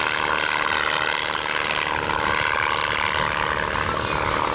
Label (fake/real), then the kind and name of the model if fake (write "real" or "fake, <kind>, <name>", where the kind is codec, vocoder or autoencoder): real